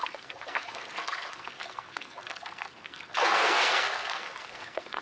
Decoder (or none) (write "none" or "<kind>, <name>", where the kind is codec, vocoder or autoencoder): codec, SNAC